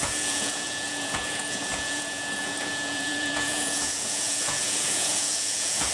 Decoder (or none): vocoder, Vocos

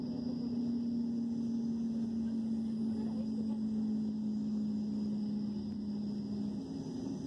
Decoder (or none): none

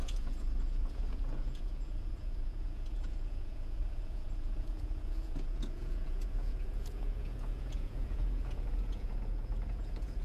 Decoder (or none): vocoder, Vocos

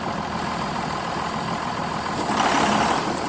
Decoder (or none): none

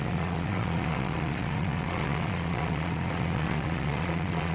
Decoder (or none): vocoder, Vocos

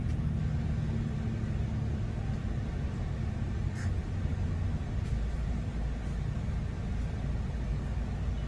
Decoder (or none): none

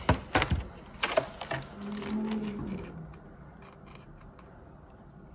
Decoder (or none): none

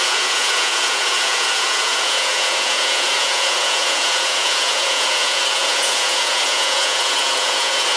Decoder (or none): vocoder, Vocos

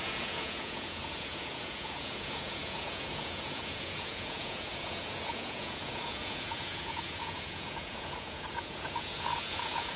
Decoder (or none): vocoder, Vocos